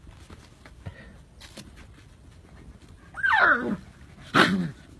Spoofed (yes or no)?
no